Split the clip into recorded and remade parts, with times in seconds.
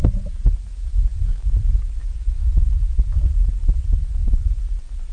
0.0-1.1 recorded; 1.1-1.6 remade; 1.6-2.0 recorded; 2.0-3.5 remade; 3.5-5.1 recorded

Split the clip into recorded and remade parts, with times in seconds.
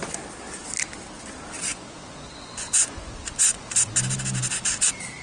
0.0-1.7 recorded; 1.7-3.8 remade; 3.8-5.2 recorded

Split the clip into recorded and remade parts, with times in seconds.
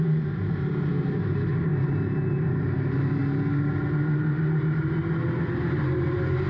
0.0-1.7 remade; 1.7-2.3 recorded; 2.3-3.2 remade; 3.2-5.5 recorded; 5.5-6.5 remade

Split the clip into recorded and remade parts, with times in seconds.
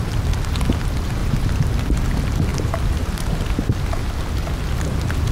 0.0-1.2 recorded; 1.2-1.7 remade; 1.7-2.5 recorded; 2.5-3.1 remade; 3.1-5.3 recorded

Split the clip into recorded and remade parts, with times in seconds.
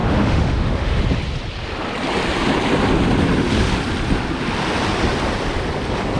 0.0-1.0 remade; 1.0-6.2 recorded